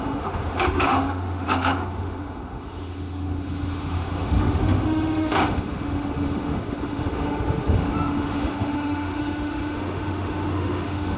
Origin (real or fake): fake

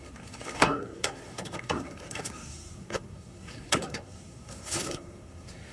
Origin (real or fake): fake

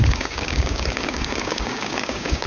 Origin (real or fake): fake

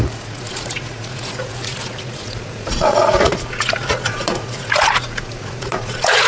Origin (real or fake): fake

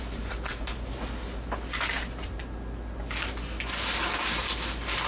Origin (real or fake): real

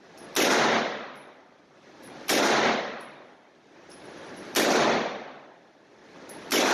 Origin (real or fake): fake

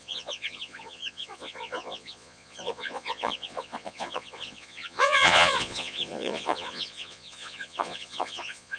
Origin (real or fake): fake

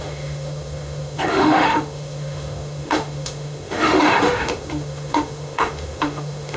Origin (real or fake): fake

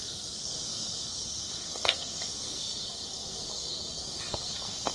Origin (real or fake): fake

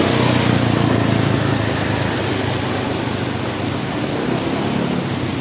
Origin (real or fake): real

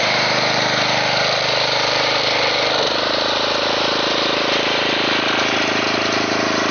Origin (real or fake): fake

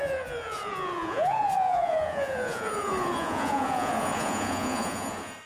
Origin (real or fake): fake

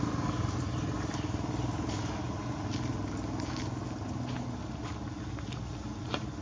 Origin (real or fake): real